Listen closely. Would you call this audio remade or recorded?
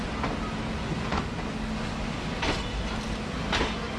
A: recorded